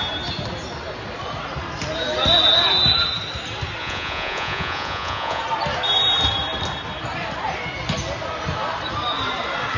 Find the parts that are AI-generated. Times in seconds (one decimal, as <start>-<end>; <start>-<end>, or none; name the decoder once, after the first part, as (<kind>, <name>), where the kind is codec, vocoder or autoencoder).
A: 3.8-5.4 (vocoder, Vocos)

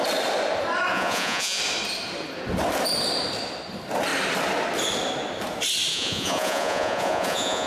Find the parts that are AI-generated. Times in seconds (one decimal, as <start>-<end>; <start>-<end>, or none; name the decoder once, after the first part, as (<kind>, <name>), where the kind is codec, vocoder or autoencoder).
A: 0.9-1.6 (vocoder, Vocos); 5.9-7.7